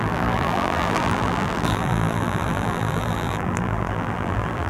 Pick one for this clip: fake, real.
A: fake